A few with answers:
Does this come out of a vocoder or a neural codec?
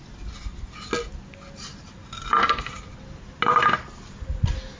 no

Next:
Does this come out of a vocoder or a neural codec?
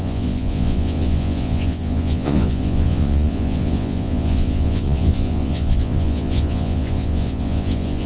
yes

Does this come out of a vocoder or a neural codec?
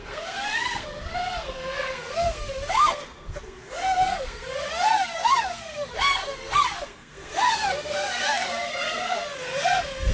yes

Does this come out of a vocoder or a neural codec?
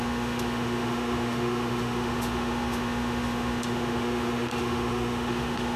yes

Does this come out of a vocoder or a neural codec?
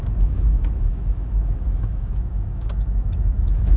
yes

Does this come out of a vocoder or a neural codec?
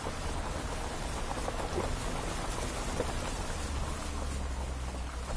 no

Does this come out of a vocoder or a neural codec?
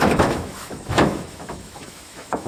yes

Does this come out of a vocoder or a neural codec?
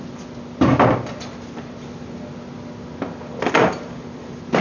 no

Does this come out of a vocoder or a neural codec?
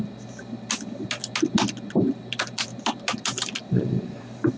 no